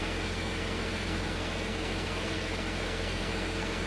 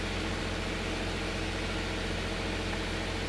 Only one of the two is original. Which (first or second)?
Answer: second